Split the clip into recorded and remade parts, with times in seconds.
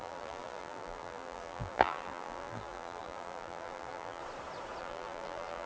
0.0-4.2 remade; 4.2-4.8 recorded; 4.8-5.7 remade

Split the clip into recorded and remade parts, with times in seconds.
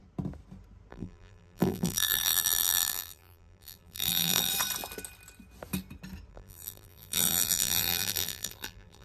0.0-0.9 recorded; 0.9-4.5 remade; 4.5-6.3 recorded; 6.3-9.0 remade